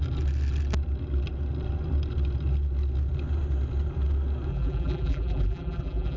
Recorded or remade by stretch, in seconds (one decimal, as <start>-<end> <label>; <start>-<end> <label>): 0.0-4.5 recorded; 4.5-6.2 remade